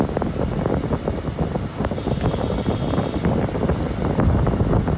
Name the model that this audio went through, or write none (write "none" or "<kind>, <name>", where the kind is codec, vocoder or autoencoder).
none